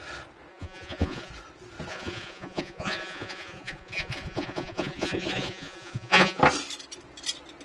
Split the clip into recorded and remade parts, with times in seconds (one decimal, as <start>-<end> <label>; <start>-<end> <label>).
0.0-0.5 recorded; 0.5-1.3 remade; 1.3-1.9 recorded; 1.9-6.4 remade; 6.4-7.6 recorded